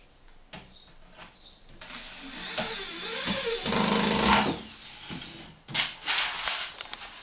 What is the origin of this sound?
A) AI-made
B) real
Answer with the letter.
B